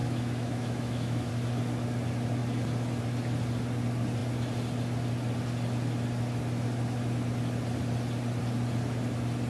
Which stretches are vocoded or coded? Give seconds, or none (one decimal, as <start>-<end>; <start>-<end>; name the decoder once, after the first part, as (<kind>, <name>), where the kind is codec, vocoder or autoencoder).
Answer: 0.0-1.3 (autoencoder, DAC-VAE)